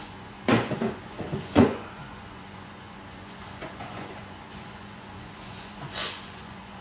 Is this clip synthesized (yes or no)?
yes